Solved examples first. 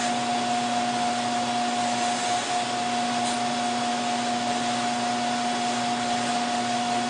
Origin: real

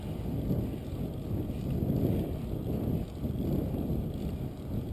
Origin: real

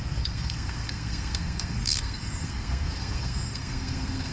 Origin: fake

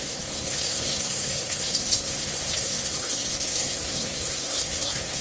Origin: fake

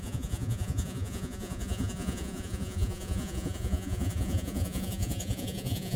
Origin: fake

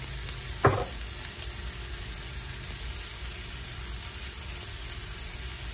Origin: real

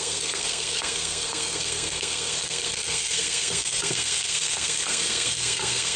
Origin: fake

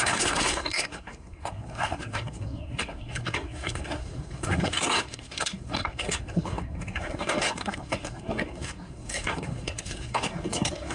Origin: fake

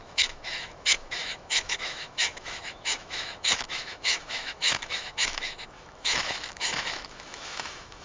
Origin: fake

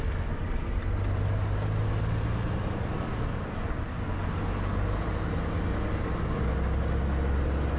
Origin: real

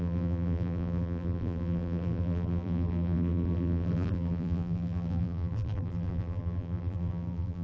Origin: fake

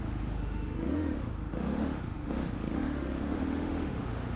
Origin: fake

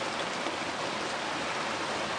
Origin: real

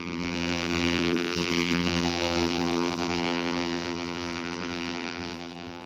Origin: fake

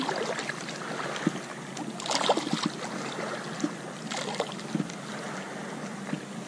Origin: real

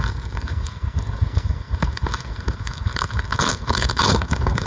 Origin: fake